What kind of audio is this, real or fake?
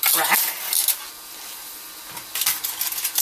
real